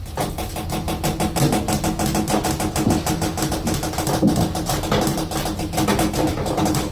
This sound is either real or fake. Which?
real